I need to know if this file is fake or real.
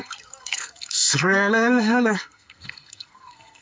fake